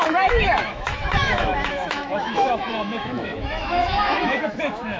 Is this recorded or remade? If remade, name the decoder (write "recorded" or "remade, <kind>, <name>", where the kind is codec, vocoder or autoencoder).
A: remade, autoencoder, DAC-VAE